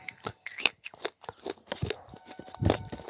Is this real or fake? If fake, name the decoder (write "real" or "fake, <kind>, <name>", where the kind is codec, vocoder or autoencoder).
real